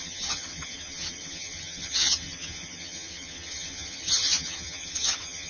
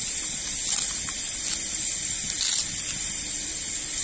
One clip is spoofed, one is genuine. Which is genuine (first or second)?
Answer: second